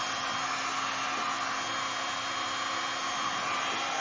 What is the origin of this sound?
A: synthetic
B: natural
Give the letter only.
B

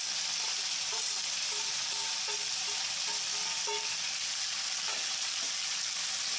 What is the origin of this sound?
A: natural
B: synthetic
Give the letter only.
A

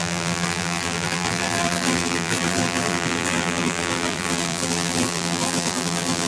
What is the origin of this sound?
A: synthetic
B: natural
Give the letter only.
A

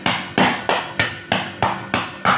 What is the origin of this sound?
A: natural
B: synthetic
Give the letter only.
A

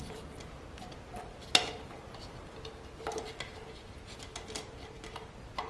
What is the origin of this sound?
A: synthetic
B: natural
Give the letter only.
B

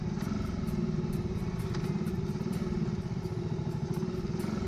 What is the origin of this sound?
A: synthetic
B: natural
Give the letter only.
B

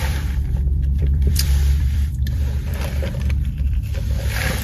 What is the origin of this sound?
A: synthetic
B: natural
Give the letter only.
A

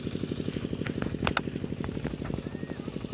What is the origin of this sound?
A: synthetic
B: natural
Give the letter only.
B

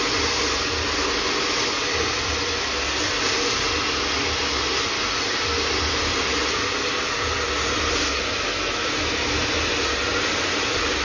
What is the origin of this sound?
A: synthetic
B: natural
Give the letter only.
B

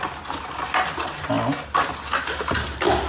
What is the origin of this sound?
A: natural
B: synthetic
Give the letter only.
A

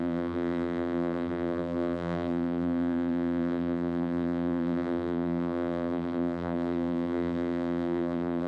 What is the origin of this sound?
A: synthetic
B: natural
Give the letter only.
A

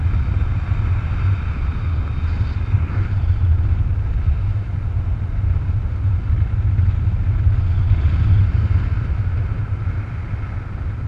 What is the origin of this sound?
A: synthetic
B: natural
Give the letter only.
B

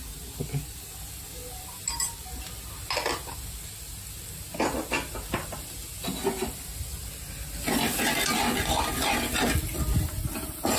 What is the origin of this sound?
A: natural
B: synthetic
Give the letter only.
A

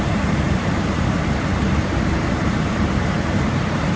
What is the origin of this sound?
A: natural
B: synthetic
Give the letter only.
B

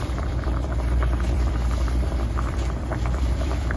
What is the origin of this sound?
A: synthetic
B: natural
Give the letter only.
A